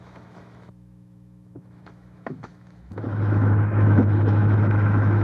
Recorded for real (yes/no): no